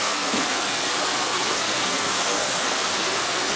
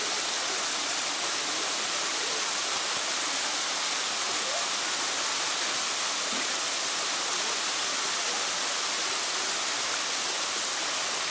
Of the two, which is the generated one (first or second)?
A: first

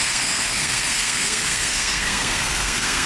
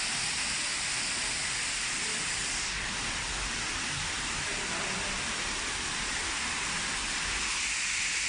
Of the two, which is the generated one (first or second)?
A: first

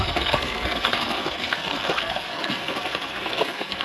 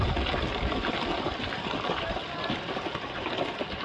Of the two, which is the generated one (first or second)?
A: first